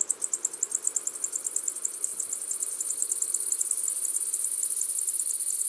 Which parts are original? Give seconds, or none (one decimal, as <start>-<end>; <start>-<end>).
0.0-5.7